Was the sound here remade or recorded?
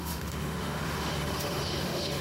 remade